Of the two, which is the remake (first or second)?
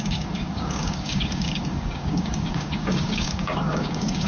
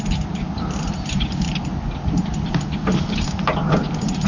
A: first